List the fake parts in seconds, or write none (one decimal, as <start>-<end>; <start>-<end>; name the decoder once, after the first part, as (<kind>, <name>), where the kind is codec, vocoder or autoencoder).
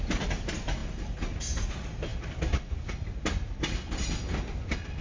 none